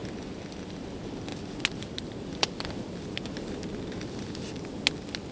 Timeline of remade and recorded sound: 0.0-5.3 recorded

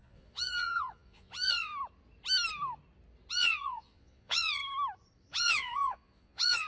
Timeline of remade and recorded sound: 0.0-1.7 remade; 1.7-3.3 recorded; 3.3-4.6 remade; 4.6-5.3 recorded; 5.3-6.7 remade

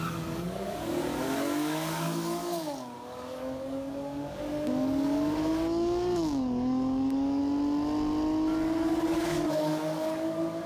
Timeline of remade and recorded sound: 0.0-7.4 remade; 7.4-9.0 recorded; 9.0-10.7 remade

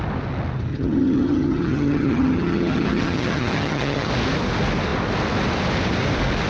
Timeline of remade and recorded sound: 0.0-0.7 recorded; 0.7-4.1 remade; 4.1-6.5 recorded

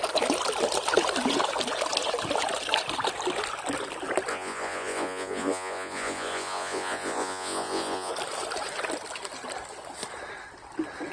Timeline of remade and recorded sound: 0.0-4.3 recorded; 4.3-8.1 remade; 8.1-11.1 recorded

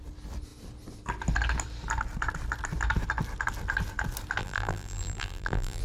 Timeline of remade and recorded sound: 0.0-4.4 recorded; 4.4-5.8 remade

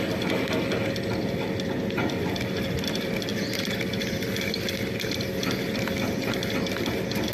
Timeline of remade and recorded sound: 0.0-7.3 recorded